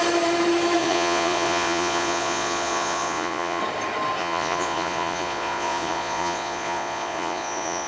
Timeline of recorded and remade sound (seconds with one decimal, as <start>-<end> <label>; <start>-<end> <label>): 0.0-0.8 recorded; 0.8-3.6 remade; 3.6-4.2 recorded; 4.2-7.9 remade